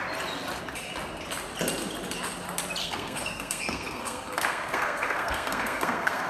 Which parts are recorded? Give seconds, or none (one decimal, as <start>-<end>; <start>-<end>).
0.0-2.8